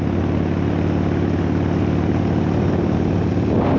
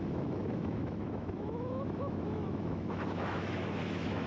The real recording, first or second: first